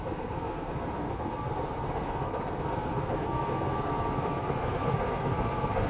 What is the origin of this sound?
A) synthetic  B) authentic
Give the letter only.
A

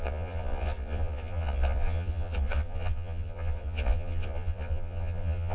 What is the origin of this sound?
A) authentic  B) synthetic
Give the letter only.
B